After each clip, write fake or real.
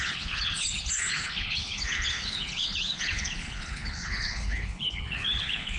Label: fake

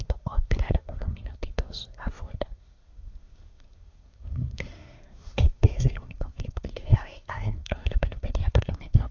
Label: fake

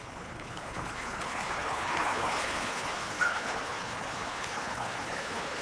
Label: fake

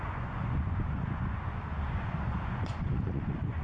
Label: fake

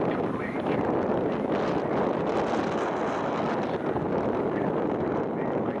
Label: real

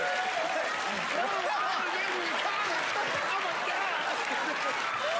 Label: real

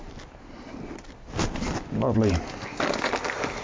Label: real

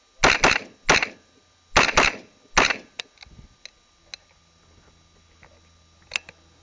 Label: real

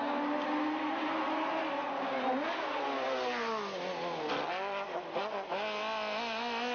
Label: real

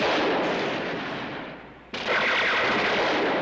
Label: real